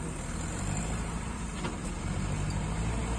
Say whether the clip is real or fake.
real